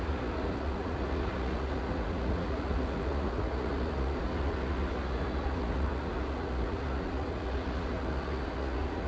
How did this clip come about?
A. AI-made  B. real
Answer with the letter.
A